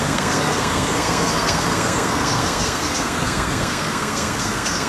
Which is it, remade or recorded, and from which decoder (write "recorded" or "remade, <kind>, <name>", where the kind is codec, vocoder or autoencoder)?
remade, codec, SNAC